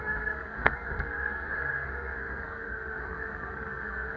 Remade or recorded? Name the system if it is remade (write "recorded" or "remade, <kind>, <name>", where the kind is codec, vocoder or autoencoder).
remade, codec, SNAC